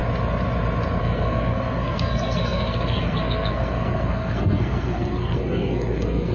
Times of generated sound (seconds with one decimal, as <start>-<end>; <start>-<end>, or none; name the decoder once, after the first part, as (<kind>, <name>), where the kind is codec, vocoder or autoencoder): 1.0-6.3 (codec, SNAC)